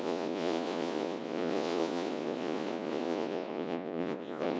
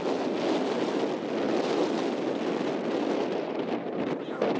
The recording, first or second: second